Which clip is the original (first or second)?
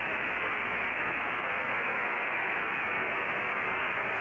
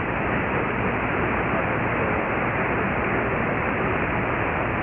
second